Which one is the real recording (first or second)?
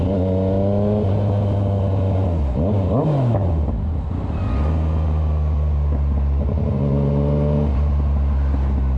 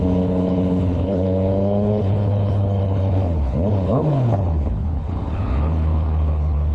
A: first